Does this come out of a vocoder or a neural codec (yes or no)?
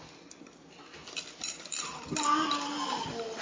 no